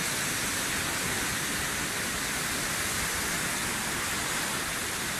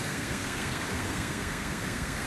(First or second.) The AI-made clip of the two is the second